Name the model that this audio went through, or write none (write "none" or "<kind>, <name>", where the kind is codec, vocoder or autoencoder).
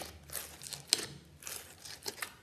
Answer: none